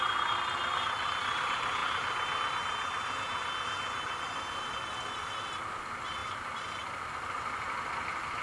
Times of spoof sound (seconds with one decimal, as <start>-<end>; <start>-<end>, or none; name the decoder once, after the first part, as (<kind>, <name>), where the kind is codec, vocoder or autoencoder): none